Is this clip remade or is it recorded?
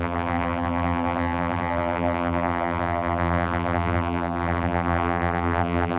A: remade